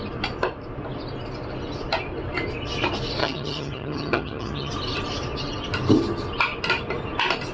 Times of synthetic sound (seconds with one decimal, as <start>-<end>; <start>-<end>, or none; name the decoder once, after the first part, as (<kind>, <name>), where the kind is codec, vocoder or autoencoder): 3.2-4.7 (vocoder, HiFi-GAN)